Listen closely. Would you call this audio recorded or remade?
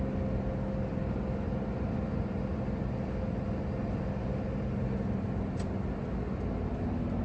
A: recorded